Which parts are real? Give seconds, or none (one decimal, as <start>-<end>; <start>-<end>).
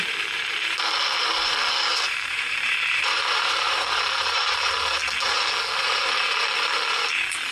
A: 0.0-1.9; 4.7-7.5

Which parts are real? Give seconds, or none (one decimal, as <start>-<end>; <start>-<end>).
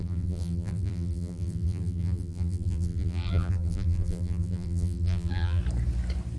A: 5.6-6.4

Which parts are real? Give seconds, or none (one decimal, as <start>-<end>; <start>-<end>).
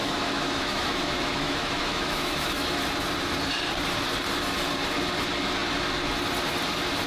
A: 2.7-7.1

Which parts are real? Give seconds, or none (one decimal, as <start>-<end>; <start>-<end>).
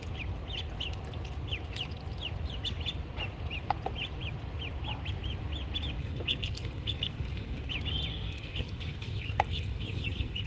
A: 0.0-6.0; 7.7-8.1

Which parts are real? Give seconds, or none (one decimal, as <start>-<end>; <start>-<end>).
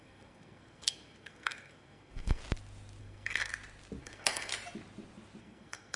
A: 2.4-3.0; 3.5-4.0; 4.5-5.4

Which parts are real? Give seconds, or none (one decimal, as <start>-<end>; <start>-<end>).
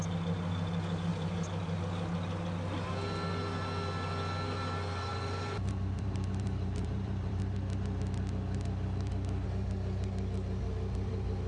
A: 0.0-1.1; 1.8-5.1; 7.4-11.5